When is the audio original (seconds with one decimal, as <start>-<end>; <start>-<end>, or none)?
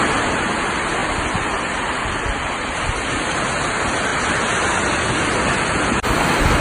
0.0-6.6